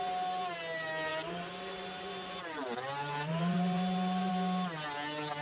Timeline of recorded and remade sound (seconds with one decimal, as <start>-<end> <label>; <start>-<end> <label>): 0.0-1.1 recorded; 1.1-4.3 remade; 4.3-5.4 recorded